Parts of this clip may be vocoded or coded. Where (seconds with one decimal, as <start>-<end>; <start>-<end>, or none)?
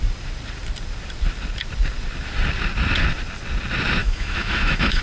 4.0-5.0